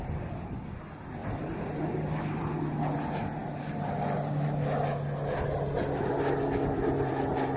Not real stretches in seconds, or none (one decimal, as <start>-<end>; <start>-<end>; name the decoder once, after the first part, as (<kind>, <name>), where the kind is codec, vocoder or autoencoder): none